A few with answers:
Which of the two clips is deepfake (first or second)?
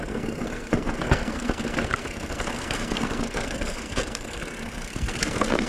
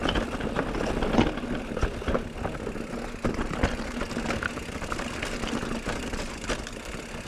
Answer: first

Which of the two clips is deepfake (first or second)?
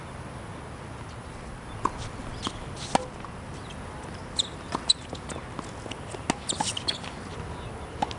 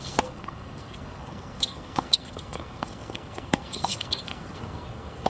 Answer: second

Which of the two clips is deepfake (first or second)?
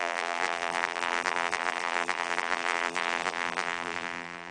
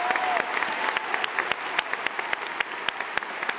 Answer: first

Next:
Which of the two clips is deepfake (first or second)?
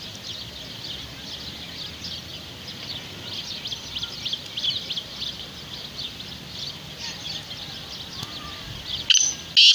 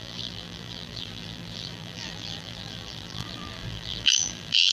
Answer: second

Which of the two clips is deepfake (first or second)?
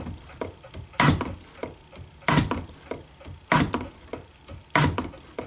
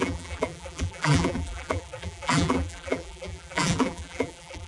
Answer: second